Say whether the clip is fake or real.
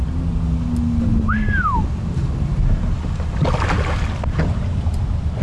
real